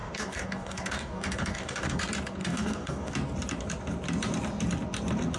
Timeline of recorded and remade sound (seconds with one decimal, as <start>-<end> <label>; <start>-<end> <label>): 0.0-2.0 remade; 2.0-2.4 recorded; 2.4-3.1 remade; 3.1-5.4 recorded